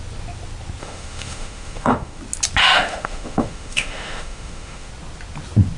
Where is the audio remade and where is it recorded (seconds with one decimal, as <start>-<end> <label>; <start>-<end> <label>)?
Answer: 0.0-0.8 recorded; 0.8-2.2 remade; 2.2-2.6 recorded; 2.6-4.9 remade; 4.9-5.8 recorded